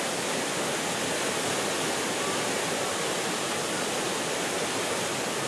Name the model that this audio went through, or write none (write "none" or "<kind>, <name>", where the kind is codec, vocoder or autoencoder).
none